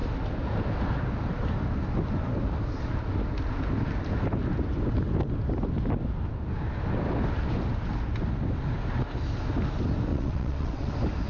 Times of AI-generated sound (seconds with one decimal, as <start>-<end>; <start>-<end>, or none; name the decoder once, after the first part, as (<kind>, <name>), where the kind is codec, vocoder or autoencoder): 10.1-10.9 (vocoder, WaveNeXt)